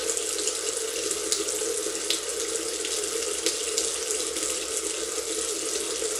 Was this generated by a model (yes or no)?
no